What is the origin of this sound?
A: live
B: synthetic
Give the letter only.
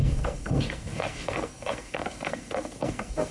B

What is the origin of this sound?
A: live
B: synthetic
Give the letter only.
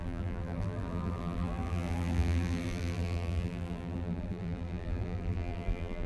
B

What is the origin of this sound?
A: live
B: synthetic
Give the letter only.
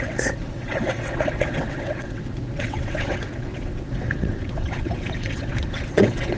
B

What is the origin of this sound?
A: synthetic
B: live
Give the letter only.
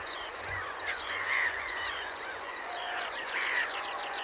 A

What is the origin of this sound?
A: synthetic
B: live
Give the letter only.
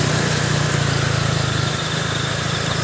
B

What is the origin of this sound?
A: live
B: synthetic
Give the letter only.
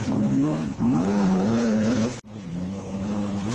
B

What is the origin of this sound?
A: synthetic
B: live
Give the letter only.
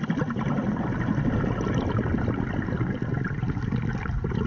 B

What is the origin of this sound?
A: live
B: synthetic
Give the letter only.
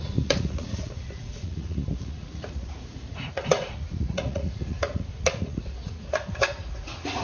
B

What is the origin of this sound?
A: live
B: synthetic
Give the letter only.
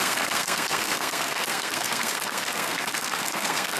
B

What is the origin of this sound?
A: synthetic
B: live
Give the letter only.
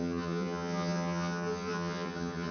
A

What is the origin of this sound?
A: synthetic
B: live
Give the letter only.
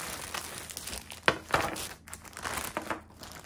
B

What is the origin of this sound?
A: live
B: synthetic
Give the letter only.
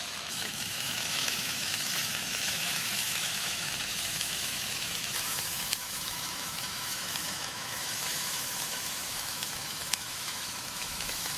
B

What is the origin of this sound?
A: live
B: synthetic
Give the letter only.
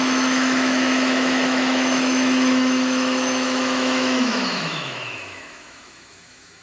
B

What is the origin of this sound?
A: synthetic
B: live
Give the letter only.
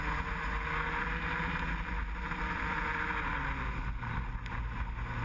B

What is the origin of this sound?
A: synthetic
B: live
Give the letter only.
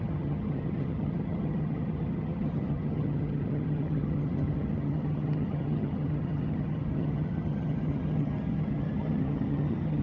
A